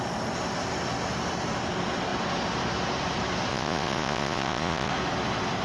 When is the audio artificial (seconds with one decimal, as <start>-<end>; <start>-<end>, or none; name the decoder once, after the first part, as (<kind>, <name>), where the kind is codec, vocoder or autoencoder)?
3.5-4.9 (vocoder, Vocos)